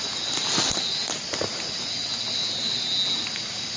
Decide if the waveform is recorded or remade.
recorded